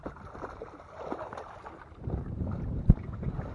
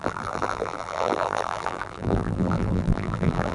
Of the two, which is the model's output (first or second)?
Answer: second